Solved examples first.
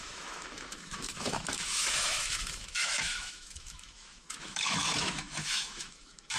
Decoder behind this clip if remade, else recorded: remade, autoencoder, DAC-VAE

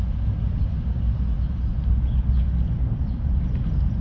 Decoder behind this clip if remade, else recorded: recorded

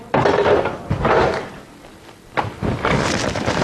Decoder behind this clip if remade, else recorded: recorded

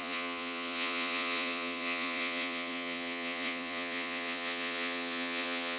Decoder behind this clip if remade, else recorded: remade, vocoder, Vocos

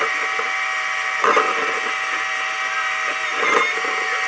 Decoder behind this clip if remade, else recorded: recorded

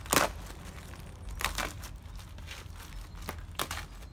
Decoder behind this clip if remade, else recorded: recorded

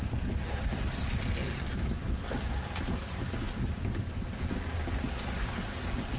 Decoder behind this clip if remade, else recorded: recorded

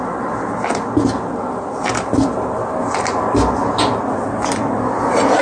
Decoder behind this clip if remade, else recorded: recorded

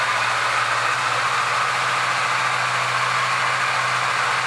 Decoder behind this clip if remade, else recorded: recorded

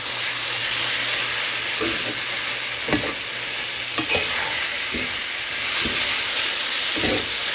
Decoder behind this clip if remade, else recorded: recorded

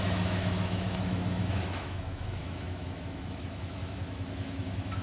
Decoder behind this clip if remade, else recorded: remade, autoencoder, DAC-VAE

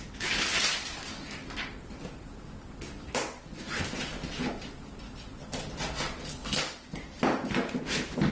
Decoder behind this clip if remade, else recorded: recorded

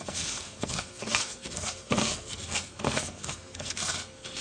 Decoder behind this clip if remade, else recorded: remade, codec, SNAC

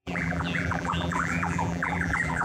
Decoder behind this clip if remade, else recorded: remade, vocoder, BigVGAN v2